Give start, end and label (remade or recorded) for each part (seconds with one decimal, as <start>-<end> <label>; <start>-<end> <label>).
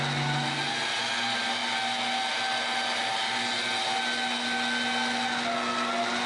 0.0-6.3 recorded